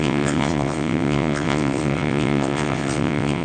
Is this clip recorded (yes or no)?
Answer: no